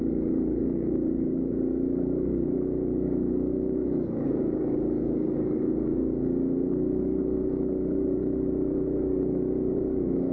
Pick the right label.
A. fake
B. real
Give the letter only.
A